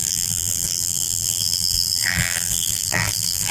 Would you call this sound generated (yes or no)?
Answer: yes